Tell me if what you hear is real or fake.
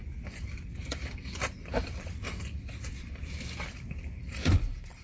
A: fake